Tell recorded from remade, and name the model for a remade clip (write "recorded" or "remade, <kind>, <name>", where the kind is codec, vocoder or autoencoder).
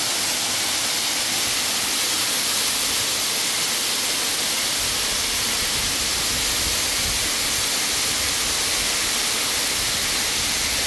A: recorded